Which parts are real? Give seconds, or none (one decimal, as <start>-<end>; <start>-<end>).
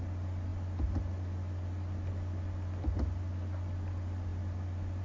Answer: 0.0-5.0